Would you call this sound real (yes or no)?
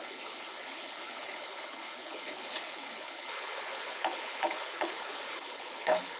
no